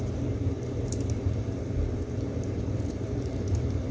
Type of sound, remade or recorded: remade